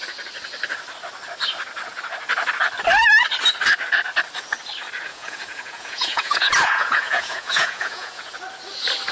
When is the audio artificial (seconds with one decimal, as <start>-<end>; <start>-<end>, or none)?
5.1-8.3